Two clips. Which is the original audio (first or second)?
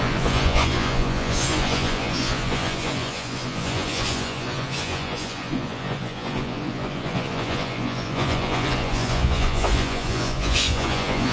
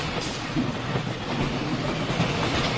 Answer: second